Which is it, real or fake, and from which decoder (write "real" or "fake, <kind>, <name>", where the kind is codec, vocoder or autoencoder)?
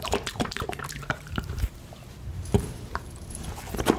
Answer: fake, vocoder, BigVGAN v2